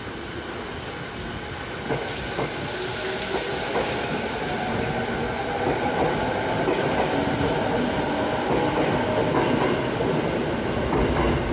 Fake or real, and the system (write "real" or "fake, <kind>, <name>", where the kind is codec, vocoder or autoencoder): real